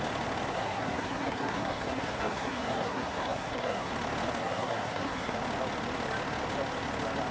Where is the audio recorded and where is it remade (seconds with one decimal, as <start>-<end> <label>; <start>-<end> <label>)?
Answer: 0.0-0.5 recorded; 0.5-3.9 remade; 3.9-4.4 recorded; 4.4-5.4 remade; 5.4-7.3 recorded

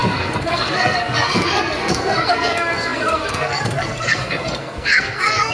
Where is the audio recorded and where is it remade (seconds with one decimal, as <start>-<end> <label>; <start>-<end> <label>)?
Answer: 0.0-5.5 remade

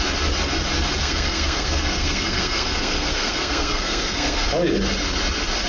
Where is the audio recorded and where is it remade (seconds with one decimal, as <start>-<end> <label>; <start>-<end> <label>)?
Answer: 0.0-1.0 recorded; 1.0-4.4 remade; 4.4-5.7 recorded

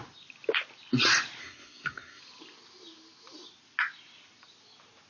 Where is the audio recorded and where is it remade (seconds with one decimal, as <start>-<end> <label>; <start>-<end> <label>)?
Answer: 0.0-1.4 recorded; 1.4-2.2 remade; 2.2-5.1 recorded

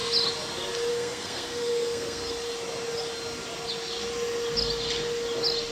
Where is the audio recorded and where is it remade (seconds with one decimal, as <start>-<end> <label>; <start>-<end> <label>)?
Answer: 0.0-0.9 recorded; 0.9-2.2 remade; 2.2-5.7 recorded